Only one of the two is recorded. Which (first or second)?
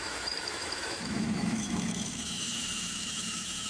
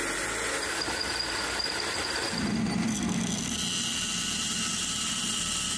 second